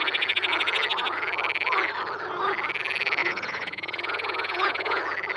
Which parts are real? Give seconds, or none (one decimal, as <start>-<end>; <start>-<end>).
0.0-3.2; 5.0-5.4